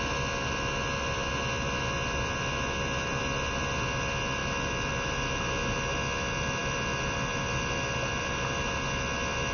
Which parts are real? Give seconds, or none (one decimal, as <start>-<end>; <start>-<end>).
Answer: 0.0-9.5